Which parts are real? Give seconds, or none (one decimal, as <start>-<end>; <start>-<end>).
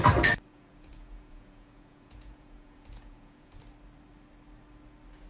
0.0-0.5; 3.6-5.3